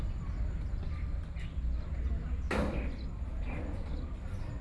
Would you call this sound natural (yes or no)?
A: yes